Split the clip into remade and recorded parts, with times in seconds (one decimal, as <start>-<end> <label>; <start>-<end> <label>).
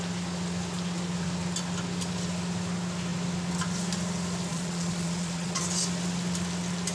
0.0-4.5 recorded; 4.5-5.6 remade; 5.6-6.9 recorded